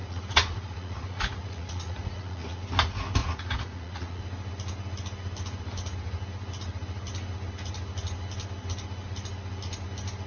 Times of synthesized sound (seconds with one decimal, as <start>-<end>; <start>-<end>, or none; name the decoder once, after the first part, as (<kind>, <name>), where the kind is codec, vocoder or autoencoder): 0.0-2.6 (vocoder, Vocos); 3.2-4.2